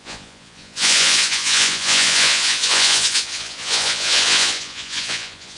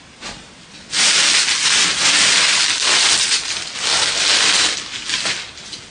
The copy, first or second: first